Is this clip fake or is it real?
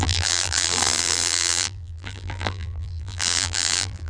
fake